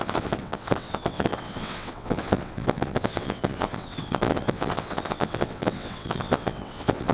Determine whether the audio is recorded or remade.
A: remade